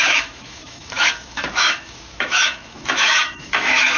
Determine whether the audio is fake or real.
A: fake